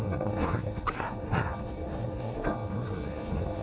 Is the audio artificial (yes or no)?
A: yes